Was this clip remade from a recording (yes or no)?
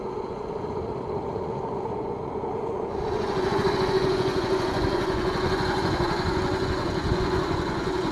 yes